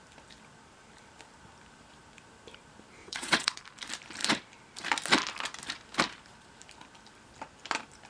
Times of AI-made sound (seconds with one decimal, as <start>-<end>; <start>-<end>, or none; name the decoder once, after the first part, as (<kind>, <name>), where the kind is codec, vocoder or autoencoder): 3.0-3.6 (vocoder, WaveNeXt)